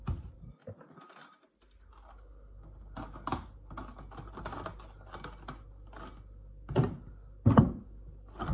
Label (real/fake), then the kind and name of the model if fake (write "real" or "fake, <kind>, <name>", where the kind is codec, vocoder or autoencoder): real